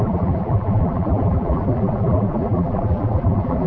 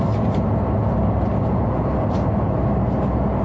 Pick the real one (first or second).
second